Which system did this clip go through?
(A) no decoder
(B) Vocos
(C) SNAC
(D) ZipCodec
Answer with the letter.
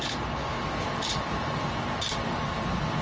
A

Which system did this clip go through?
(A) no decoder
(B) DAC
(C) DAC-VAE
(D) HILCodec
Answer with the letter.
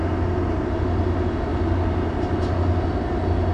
A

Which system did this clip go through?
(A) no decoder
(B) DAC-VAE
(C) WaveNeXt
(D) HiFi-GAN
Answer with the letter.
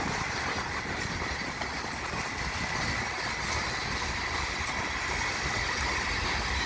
A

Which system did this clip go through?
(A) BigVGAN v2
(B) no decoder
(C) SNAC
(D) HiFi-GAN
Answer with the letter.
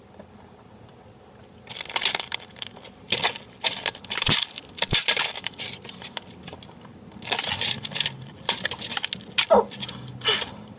B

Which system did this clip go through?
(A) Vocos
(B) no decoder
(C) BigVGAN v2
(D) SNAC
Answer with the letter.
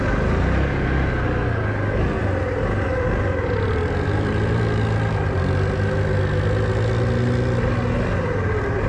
B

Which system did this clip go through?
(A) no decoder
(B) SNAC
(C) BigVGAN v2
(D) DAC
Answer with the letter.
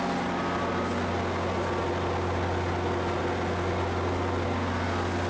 A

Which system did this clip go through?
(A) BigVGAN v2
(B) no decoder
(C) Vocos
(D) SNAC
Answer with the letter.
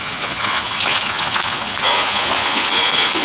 C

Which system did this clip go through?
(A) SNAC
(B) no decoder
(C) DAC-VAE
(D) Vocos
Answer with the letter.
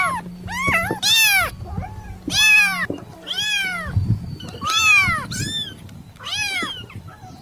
B